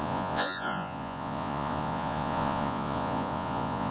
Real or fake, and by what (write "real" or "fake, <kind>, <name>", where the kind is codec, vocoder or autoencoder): fake, vocoder, Vocos